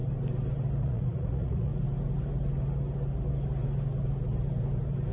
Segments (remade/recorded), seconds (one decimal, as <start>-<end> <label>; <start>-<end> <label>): 0.0-0.8 recorded; 0.8-1.7 remade; 1.7-5.1 recorded